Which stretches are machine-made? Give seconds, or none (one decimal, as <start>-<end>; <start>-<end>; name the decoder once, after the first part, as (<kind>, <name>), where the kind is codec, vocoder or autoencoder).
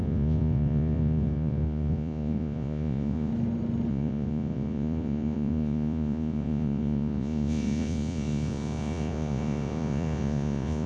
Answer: 0.0-3.3 (vocoder, Vocos); 3.9-10.9